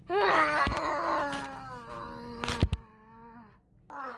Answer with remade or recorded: recorded